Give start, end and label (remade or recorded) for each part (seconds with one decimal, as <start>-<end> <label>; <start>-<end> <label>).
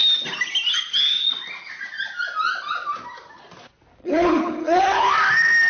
0.0-4.0 recorded; 4.0-5.1 remade; 5.1-5.7 recorded